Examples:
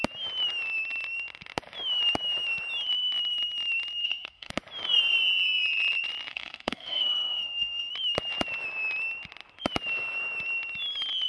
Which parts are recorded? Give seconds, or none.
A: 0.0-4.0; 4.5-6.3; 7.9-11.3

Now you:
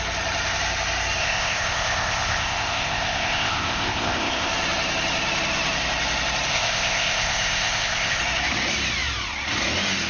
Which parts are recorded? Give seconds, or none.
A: 0.0-1.2; 4.5-6.5; 8.2-10.1

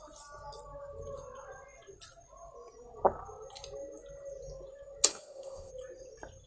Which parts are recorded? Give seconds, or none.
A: 0.0-5.1; 5.7-6.5